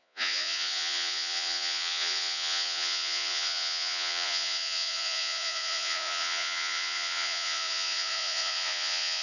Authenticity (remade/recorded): remade